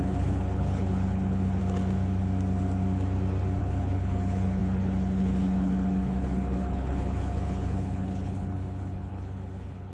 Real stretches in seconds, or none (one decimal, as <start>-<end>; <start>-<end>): 1.6-3.6